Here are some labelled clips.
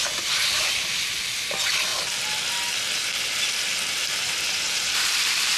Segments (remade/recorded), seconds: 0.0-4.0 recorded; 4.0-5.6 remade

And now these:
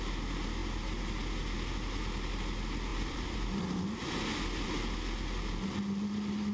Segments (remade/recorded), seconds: 0.0-2.9 recorded; 2.9-3.6 remade; 3.6-6.5 recorded

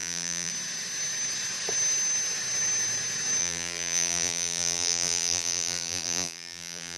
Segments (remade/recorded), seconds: 0.0-0.5 remade; 0.5-3.4 recorded; 3.4-7.0 remade

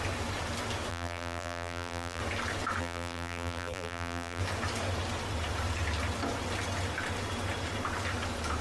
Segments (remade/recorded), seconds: 0.0-0.9 recorded; 0.9-2.2 remade; 2.2-2.8 recorded; 2.8-4.4 remade; 4.4-8.6 recorded

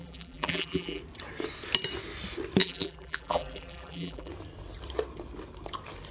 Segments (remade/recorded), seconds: 0.0-1.0 remade; 1.0-2.6 recorded; 2.6-4.3 remade; 4.3-6.1 recorded

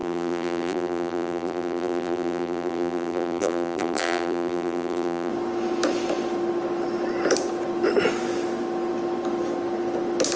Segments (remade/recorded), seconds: 0.0-5.3 remade; 5.3-10.4 recorded

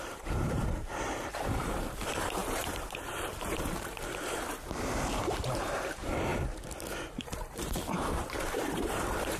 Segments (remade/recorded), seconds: 0.0-3.9 remade; 3.9-4.7 recorded; 4.7-6.3 remade; 6.3-7.2 recorded; 7.2-9.4 remade

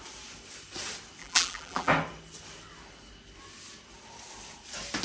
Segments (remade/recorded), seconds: 0.0-1.2 recorded; 1.2-1.9 remade; 1.9-5.0 recorded